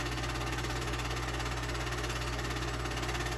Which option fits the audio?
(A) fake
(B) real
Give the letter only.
B